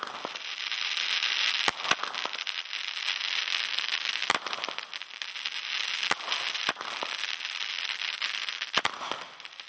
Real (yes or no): yes